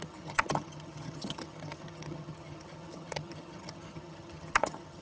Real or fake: fake